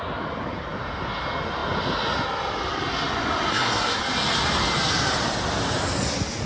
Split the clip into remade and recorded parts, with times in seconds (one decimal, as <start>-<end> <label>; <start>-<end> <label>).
0.0-3.5 recorded; 3.5-4.0 remade; 4.0-6.5 recorded